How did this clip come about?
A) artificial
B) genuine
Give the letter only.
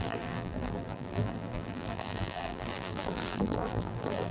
A